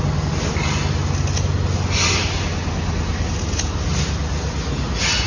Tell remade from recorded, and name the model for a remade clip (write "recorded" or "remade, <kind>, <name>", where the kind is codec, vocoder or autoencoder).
recorded